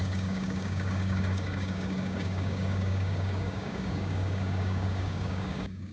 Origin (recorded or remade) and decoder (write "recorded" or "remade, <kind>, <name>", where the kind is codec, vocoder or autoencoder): remade, codec, DAC